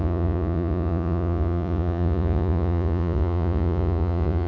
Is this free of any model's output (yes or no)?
no